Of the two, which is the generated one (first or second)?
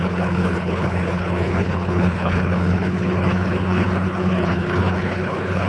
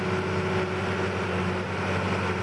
first